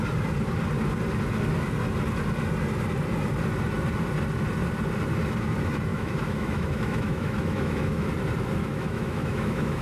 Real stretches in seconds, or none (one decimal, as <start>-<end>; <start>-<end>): 0.0-5.9; 8.1-8.6